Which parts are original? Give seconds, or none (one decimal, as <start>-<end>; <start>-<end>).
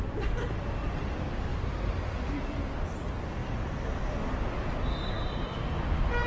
0.0-1.5; 2.6-6.3